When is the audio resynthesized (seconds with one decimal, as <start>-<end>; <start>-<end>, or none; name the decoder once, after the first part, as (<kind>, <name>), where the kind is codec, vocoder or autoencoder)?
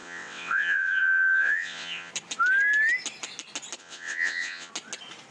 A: 0.0-2.1 (vocoder, WaveNeXt); 3.8-4.7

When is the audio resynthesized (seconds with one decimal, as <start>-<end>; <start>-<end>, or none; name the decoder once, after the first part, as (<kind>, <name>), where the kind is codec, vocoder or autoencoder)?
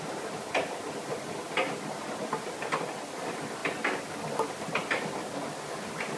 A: none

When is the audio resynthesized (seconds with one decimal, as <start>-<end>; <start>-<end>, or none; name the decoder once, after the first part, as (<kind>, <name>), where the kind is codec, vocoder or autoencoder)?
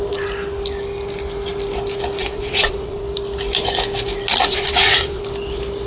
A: 2.2-3.0 (vocoder, WaveNeXt); 4.5-5.2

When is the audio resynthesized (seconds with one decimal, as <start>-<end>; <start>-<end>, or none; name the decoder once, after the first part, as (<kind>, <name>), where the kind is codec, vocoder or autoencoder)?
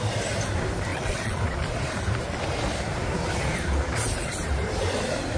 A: 0.9-1.4 (vocoder, WaveNeXt)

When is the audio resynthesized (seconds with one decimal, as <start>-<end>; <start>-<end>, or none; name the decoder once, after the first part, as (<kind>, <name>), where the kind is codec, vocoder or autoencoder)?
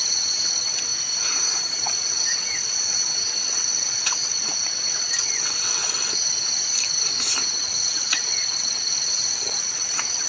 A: 0.0-0.9 (vocoder, WaveNeXt); 1.7-6.2; 7.6-10.3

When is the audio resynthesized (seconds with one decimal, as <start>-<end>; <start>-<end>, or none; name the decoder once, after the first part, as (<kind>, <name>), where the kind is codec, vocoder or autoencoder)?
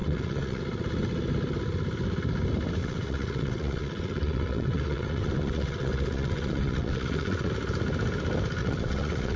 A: 0.0-0.6 (vocoder, WaveNeXt); 2.8-7.5; 8.6-9.4